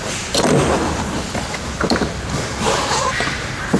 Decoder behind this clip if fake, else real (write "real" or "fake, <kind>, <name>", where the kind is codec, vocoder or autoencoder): fake, vocoder, BigVGAN v2